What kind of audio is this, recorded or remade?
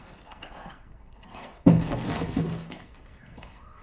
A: remade